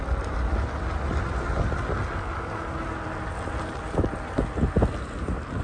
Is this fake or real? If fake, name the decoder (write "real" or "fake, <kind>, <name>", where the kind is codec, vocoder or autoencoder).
real